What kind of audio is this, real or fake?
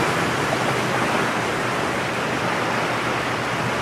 real